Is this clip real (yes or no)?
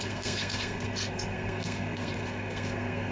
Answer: no